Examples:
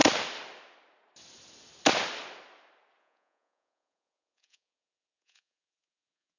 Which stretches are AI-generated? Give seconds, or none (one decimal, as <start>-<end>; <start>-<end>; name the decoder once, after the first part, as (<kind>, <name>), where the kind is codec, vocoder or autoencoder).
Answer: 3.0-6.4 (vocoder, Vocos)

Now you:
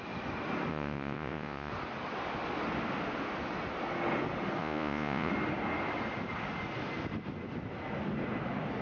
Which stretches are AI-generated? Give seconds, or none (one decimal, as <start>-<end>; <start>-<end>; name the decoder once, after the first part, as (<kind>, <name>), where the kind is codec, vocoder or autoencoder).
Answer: 0.7-1.7 (vocoder, Vocos); 4.6-5.3

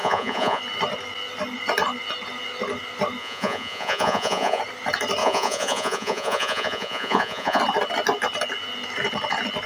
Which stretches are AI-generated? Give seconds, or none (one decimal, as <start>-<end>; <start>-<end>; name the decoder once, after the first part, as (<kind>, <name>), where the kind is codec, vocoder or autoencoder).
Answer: 0.0-0.6 (vocoder, Vocos); 3.2-4.6; 5.2-7.6

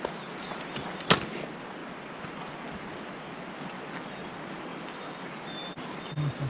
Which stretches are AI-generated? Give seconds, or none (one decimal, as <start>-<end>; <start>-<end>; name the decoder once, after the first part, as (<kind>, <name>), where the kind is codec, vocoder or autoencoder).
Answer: none